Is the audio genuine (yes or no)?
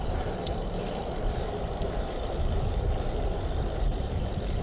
no